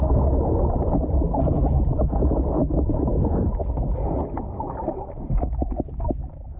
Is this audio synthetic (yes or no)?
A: no